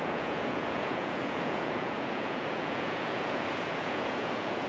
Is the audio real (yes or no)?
no